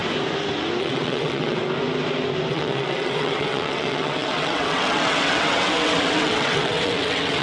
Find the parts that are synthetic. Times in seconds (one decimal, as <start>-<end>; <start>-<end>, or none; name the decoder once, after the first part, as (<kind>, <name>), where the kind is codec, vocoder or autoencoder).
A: 0.8-1.6 (vocoder, WaveNeXt); 2.5-7.4